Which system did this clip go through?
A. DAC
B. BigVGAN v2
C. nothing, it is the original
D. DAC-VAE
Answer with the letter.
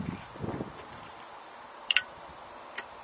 B